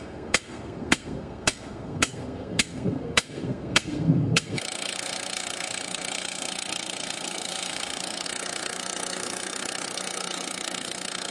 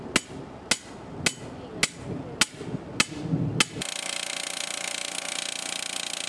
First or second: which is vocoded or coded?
first